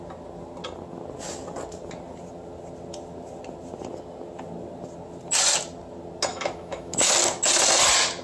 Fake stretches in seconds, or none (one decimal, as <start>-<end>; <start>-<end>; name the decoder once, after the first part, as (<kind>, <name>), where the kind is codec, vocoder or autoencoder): 6.3-7.1 (autoencoder, DAC-VAE)